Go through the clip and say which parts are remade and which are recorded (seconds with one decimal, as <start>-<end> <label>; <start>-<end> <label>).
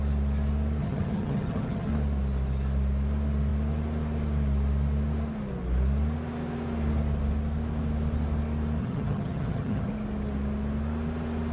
0.0-0.8 recorded; 0.8-1.9 remade; 1.9-8.8 recorded; 8.8-9.9 remade; 9.9-11.5 recorded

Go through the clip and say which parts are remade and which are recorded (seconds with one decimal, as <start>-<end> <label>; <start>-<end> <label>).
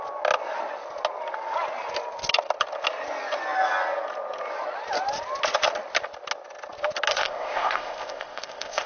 0.0-7.1 recorded; 7.1-8.9 remade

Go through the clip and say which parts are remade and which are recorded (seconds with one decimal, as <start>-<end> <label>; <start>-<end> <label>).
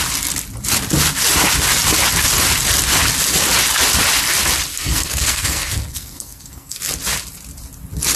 0.0-4.7 recorded; 4.7-6.9 remade; 6.9-8.2 recorded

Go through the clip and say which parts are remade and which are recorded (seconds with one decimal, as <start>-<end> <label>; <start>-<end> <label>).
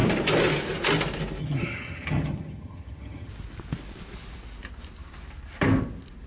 0.0-1.4 recorded; 1.4-3.3 remade; 3.3-6.3 recorded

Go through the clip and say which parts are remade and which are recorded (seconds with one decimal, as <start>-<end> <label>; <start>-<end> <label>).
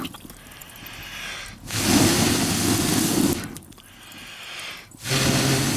0.0-5.8 recorded